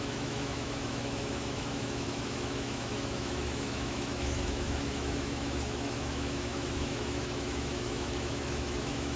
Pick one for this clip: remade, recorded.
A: remade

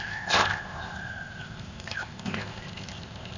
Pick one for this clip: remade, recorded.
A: remade